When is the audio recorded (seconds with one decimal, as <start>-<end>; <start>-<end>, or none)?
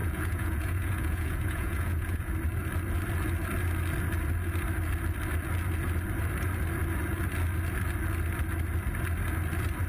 2.3-9.9